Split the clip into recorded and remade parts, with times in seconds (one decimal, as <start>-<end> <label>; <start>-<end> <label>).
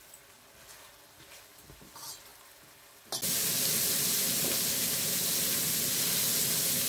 0.0-6.9 recorded